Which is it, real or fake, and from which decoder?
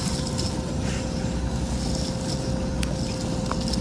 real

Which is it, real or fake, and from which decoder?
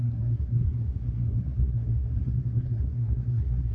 fake, codec, SNAC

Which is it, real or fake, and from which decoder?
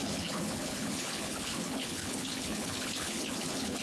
fake, codec, HILCodec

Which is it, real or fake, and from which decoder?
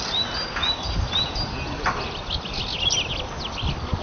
real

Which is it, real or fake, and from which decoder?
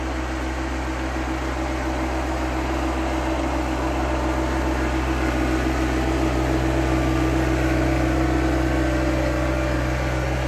real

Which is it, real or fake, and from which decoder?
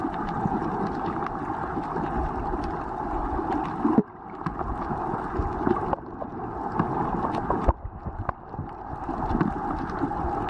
real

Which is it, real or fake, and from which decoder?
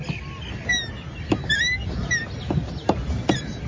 real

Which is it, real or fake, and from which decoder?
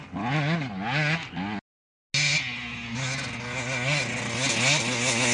real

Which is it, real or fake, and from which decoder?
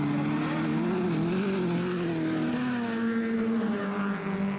real